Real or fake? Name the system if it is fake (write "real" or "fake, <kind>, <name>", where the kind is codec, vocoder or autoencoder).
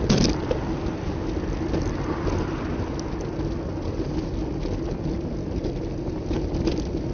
real